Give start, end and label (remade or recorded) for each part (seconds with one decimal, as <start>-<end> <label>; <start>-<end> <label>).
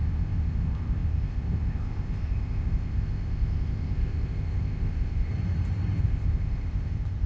0.0-5.3 remade; 5.3-6.0 recorded; 6.0-7.3 remade